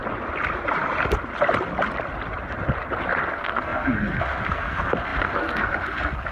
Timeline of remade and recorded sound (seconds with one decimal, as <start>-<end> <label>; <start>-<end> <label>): 0.0-3.3 recorded; 3.3-6.3 remade